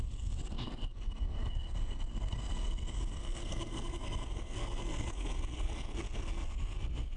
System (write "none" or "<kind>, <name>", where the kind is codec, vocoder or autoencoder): codec, SNAC